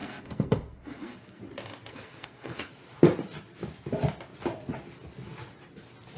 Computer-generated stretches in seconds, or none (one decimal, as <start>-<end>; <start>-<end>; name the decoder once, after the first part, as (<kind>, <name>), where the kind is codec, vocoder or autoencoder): 0.0-1.4 (codec, SNAC); 1.9-2.7